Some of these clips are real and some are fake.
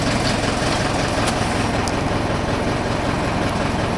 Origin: real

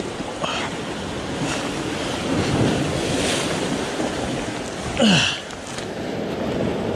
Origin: real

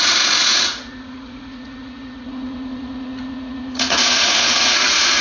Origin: fake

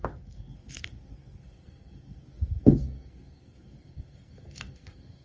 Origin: fake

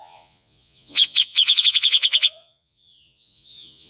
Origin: fake